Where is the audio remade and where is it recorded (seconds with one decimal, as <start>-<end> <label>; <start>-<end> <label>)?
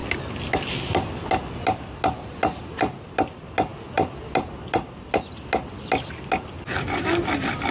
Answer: 0.0-7.7 recorded